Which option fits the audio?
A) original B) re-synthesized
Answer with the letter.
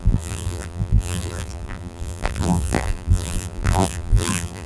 B